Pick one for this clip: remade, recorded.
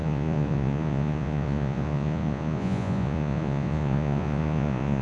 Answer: remade